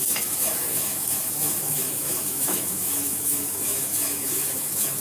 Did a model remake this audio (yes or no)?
yes